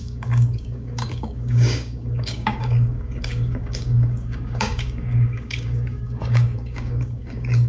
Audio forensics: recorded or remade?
remade